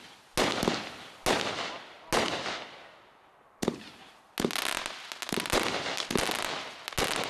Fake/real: real